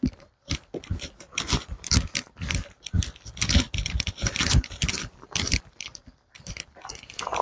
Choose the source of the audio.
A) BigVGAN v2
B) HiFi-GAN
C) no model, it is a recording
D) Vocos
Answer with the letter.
A